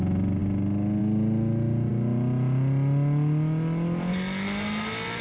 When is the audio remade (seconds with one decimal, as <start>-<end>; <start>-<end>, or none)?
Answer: none